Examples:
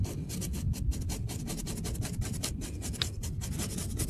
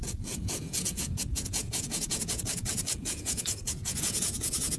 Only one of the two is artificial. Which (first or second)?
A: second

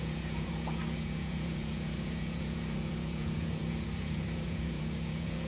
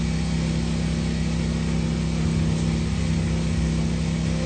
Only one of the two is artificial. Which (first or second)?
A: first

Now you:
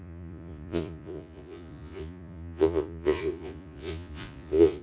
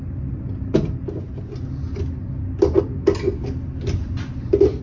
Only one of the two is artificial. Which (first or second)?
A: first